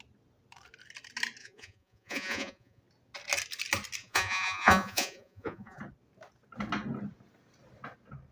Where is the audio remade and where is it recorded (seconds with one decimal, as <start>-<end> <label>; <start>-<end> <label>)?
0.0-1.4 recorded; 1.4-2.8 remade; 2.8-4.0 recorded; 4.0-5.8 remade; 5.8-8.3 recorded